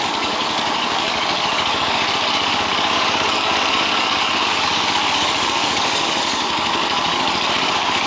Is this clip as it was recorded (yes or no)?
no